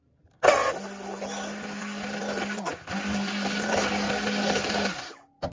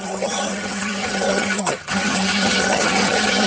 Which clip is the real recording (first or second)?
first